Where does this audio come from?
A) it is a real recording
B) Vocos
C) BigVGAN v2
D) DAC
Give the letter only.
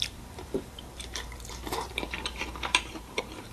C